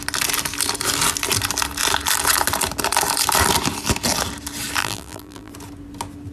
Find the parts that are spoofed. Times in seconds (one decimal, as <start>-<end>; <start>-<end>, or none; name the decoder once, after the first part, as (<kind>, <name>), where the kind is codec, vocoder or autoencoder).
4.8-5.5 (vocoder, BigVGAN v2)